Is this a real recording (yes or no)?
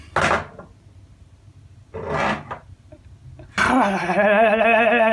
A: yes